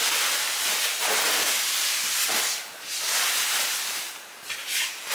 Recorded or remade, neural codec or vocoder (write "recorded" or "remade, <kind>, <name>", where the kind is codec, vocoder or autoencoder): recorded